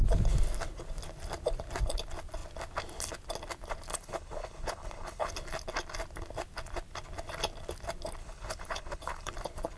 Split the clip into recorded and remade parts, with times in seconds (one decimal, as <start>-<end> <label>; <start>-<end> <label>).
0.0-3.9 recorded; 3.9-5.3 remade; 5.3-8.2 recorded; 8.2-9.3 remade; 9.3-9.8 recorded